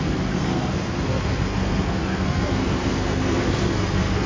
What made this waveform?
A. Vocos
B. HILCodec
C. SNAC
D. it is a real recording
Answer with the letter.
C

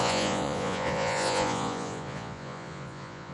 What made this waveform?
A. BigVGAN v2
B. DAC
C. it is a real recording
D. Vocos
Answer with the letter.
D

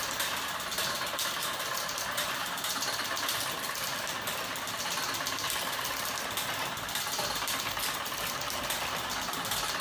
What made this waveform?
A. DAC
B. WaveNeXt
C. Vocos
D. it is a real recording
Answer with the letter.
D